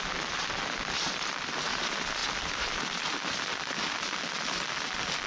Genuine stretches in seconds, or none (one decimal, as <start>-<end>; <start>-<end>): 0.0-5.3